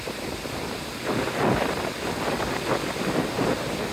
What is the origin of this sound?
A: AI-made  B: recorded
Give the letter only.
B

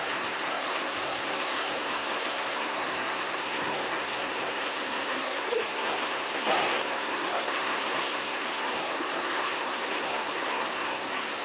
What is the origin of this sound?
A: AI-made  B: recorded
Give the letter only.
A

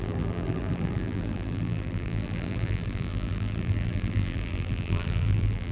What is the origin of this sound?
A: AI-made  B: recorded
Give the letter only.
A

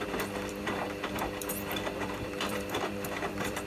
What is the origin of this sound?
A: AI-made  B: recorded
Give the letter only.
A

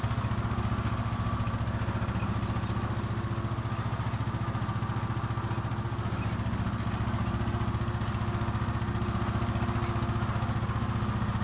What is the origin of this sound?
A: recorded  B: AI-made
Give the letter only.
A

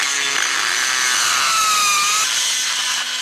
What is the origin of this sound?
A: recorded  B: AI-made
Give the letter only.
A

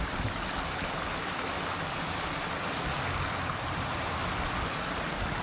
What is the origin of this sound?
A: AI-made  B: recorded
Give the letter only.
A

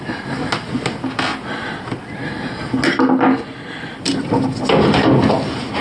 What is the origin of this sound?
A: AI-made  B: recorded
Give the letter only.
B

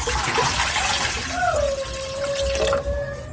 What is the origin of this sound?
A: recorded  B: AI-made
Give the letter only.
A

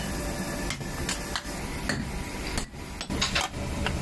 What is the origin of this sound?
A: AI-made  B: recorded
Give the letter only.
B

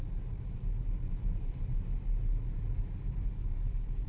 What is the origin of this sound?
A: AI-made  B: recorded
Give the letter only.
B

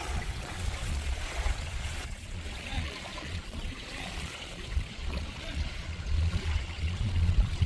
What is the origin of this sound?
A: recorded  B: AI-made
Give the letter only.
B